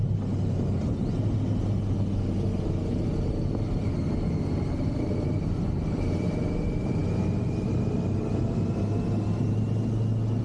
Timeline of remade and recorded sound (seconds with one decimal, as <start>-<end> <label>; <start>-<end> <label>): 0.0-10.4 recorded